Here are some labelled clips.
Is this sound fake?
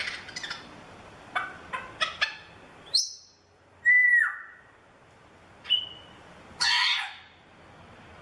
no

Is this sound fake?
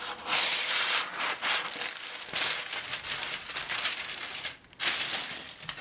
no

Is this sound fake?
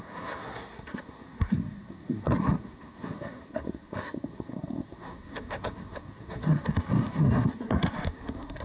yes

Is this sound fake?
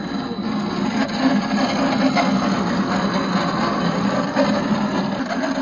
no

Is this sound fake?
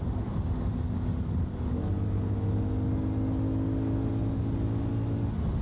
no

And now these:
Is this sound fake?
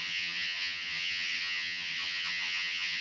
yes